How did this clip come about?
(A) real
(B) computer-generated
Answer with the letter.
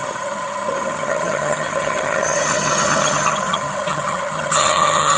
B